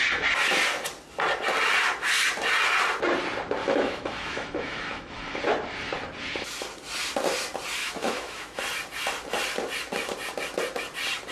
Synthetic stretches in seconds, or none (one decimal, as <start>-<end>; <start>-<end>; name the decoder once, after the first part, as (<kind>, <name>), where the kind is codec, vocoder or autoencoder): 3.6-5.4 (autoencoder, DAC-VAE); 7.8-8.6